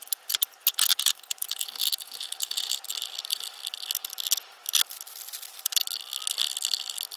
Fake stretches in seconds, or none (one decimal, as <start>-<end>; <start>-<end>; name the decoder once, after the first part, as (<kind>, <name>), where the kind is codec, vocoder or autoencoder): none